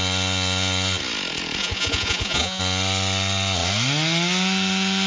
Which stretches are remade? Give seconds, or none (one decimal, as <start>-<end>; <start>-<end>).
1.6-2.6